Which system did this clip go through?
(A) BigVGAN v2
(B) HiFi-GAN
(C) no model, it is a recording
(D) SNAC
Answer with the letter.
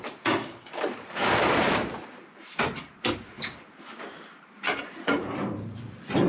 A